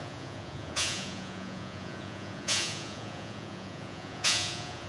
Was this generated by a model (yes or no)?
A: yes